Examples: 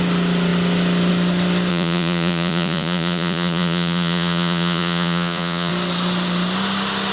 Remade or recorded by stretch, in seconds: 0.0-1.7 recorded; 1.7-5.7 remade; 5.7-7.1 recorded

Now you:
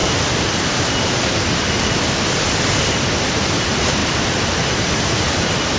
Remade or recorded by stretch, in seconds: 0.0-3.5 recorded; 3.5-5.8 remade

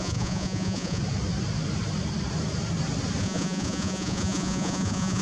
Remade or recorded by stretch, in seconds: 0.0-1.0 remade; 1.0-3.2 recorded; 3.2-5.2 remade

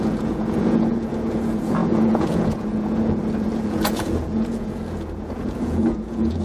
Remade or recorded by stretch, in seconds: 0.0-6.4 remade

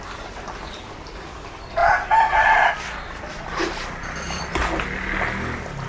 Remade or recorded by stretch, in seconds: 0.0-1.8 recorded; 1.8-4.4 remade; 4.4-5.9 recorded

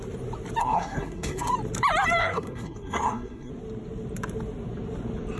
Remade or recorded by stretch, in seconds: 0.0-0.6 recorded; 0.6-1.5 remade; 1.5-2.2 recorded; 2.2-3.5 remade; 3.5-5.4 recorded